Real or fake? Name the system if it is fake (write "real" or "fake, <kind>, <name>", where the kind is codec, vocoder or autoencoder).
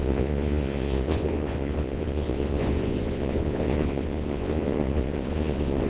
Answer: fake, vocoder, Vocos